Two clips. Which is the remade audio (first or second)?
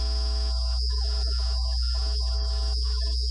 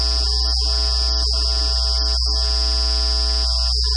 first